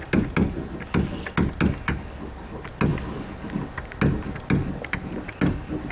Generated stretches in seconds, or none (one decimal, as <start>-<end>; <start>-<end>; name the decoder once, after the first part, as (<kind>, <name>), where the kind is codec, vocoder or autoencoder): none